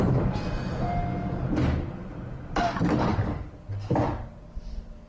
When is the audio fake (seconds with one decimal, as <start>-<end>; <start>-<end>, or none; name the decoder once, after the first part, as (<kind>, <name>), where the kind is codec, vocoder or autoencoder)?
none